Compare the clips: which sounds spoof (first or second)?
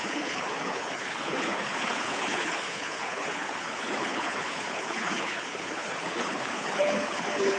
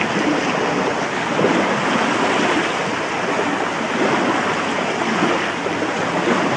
first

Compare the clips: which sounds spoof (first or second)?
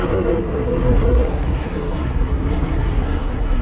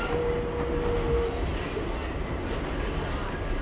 first